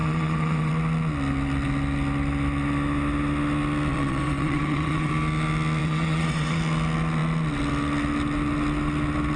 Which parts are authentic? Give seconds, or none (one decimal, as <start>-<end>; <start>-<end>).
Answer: 0.7-3.9; 5.1-5.8; 6.6-9.4